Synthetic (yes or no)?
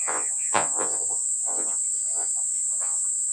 yes